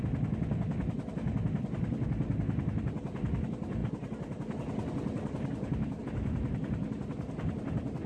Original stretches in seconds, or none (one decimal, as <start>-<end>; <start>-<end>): 0.0-8.1

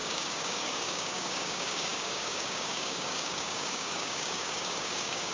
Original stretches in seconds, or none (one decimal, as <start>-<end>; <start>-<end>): none

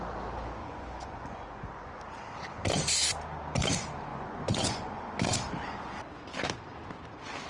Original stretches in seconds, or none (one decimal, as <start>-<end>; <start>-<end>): 0.0-0.6; 2.0-4.1; 5.0-7.5

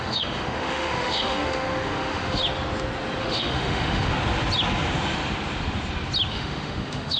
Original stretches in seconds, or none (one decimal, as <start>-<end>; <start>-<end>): 2.4-3.2; 4.1-6.3